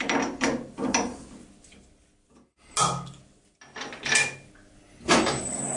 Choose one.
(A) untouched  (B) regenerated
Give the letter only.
A